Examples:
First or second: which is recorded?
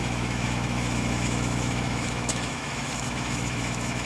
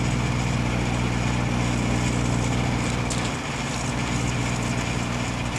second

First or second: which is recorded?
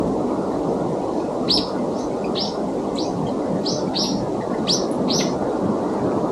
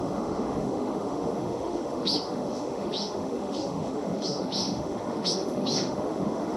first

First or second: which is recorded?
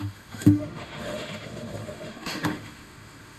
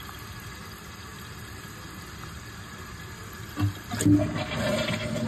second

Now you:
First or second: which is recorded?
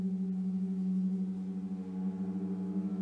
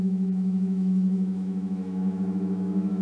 first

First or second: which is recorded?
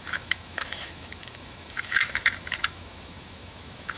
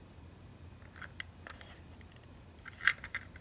second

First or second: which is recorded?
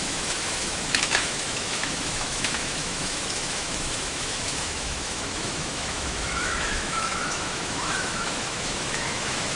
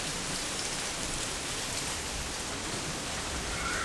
second